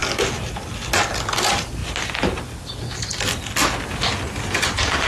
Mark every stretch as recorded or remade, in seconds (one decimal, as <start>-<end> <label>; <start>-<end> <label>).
0.0-5.1 recorded